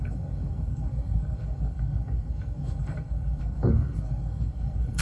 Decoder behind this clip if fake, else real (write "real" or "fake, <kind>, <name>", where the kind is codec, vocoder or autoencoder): fake, codec, SNAC